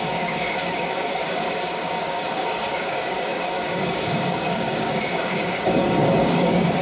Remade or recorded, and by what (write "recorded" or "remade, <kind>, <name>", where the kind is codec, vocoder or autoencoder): remade, codec, DAC